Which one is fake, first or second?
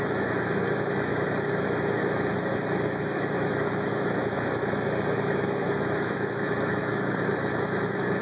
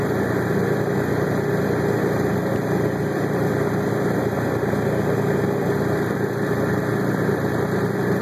first